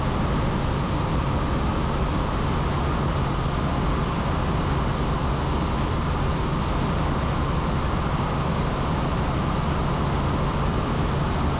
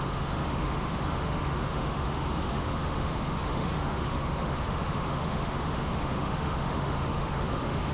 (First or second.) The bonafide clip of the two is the first